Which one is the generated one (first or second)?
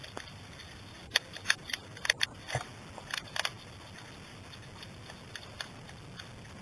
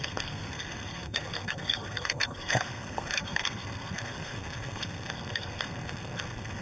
second